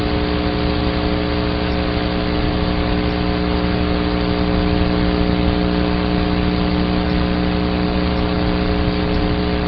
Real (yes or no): yes